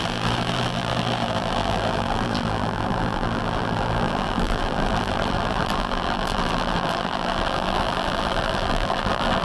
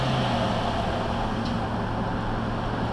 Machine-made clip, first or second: first